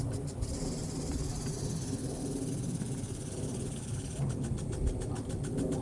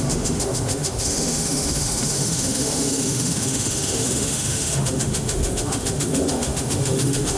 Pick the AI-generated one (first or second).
second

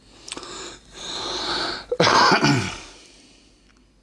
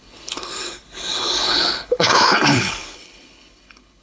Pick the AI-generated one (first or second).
second